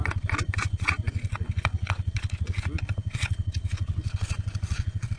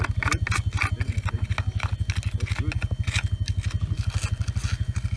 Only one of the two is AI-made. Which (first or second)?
first